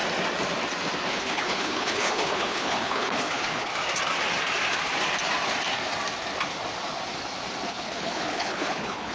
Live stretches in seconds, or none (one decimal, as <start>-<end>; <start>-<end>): 0.0-1.1; 3.7-7.7